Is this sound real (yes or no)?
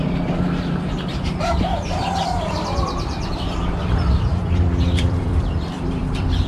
no